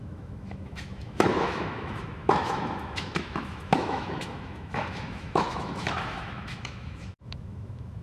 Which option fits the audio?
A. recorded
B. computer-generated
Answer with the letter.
B